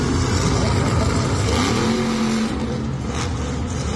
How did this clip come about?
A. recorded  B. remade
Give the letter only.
A